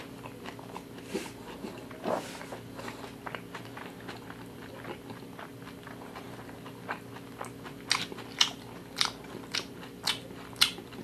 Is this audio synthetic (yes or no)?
no